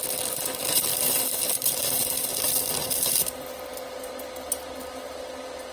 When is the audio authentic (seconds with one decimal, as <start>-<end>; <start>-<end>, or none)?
0.0-5.7